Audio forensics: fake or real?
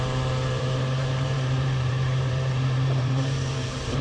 fake